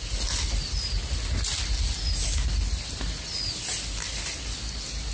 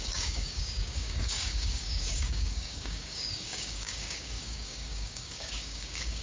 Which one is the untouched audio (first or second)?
first